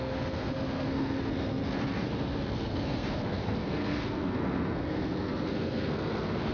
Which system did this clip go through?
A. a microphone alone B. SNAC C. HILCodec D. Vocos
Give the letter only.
B